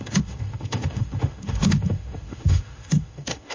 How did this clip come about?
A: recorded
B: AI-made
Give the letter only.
B